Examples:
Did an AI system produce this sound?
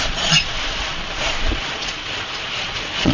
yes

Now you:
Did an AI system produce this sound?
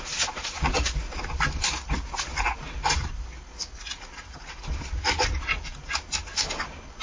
no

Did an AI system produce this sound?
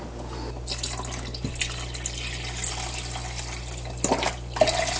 no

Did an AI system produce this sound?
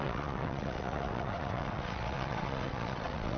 yes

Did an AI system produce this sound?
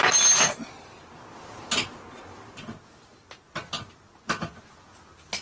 no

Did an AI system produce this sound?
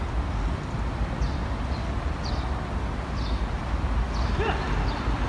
no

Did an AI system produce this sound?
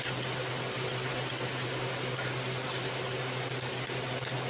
no